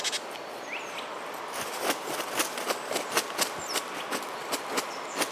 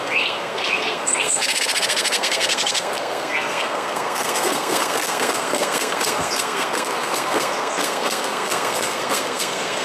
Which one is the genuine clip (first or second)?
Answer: first